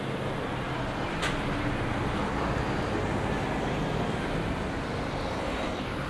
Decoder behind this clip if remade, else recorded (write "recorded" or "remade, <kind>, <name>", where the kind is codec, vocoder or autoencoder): recorded